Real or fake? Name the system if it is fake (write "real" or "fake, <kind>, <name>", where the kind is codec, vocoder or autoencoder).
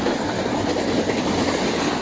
real